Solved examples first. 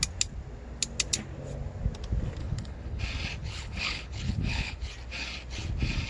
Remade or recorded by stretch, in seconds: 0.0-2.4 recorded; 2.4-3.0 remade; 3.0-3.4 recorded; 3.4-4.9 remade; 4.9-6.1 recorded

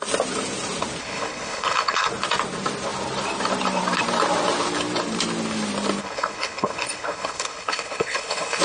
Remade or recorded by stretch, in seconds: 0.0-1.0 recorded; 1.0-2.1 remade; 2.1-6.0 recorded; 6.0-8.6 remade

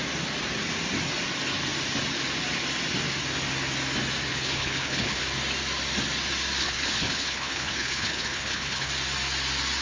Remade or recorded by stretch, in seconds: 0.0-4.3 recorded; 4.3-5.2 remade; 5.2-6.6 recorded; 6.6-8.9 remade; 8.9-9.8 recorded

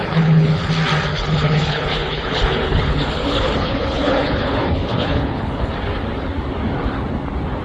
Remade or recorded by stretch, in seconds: 0.0-0.7 remade; 0.7-1.1 recorded; 1.1-5.7 remade; 5.7-7.6 recorded